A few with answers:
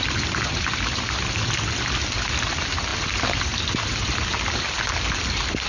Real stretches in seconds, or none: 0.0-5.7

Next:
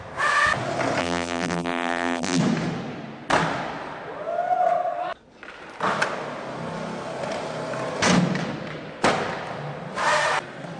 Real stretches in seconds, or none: 0.0-1.0; 2.4-10.8